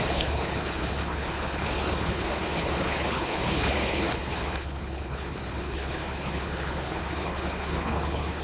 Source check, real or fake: fake